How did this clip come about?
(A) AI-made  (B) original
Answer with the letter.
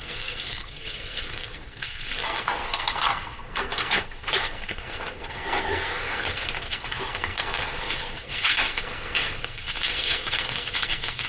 A